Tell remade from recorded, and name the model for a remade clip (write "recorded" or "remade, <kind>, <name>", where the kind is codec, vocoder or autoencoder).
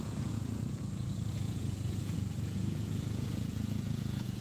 remade, vocoder, Vocos